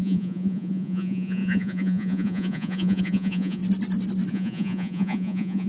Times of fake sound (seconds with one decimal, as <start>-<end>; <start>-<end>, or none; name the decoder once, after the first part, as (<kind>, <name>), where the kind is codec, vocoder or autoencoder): 0.0-3.6 (vocoder, Vocos); 4.3-5.7